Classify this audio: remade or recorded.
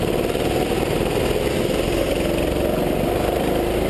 recorded